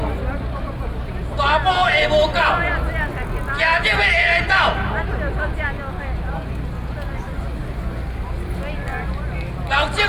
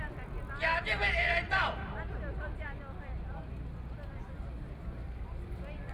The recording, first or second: first